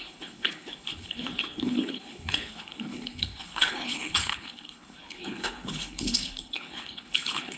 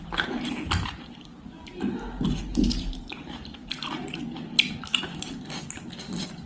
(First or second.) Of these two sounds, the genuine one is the second